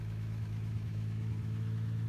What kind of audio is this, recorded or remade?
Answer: remade